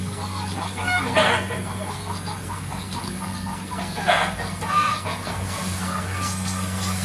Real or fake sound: fake